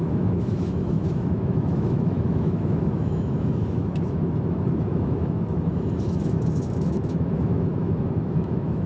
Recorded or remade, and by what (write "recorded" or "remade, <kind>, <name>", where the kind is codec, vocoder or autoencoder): remade, autoencoder, DAC-VAE